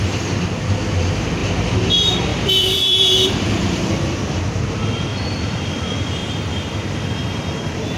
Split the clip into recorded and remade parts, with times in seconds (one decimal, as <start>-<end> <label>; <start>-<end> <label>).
0.0-2.3 recorded; 2.3-4.4 remade; 4.4-5.1 recorded; 5.1-7.1 remade; 7.1-8.0 recorded